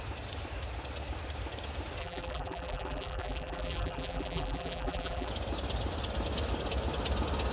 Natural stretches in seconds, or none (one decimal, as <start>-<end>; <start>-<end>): 0.0-2.0; 5.3-7.5